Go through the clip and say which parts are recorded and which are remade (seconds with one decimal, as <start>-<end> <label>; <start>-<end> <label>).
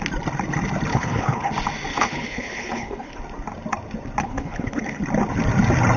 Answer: 0.0-0.9 recorded; 0.9-1.5 remade; 1.5-1.9 recorded; 1.9-3.2 remade; 3.2-4.2 recorded; 4.2-5.0 remade; 5.0-6.0 recorded